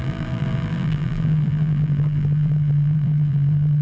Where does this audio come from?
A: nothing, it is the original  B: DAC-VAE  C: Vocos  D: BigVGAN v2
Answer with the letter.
D